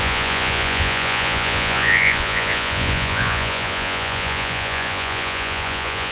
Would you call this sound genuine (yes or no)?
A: no